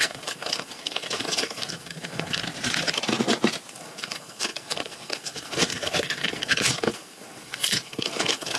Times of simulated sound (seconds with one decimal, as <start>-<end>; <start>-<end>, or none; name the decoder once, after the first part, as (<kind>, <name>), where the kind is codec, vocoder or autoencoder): 0.0-2.4 (codec, SNAC); 3.7-8.6